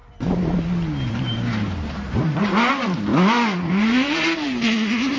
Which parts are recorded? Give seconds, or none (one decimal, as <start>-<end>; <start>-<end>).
0.0-1.1; 3.1-3.7